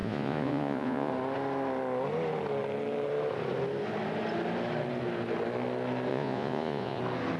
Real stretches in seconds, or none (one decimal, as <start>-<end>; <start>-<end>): 1.1-6.1; 7.0-7.4